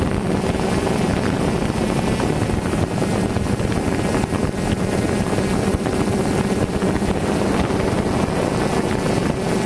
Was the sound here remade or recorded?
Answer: remade